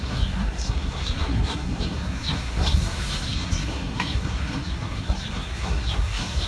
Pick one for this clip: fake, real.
fake